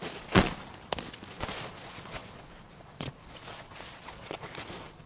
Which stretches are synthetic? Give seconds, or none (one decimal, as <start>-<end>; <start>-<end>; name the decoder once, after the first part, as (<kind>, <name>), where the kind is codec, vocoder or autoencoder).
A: 0.0-0.5 (vocoder, Vocos); 1.3-5.1